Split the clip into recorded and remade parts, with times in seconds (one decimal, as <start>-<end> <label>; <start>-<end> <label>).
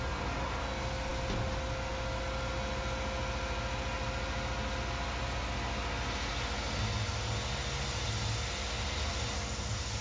0.0-10.0 recorded